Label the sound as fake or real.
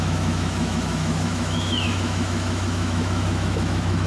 fake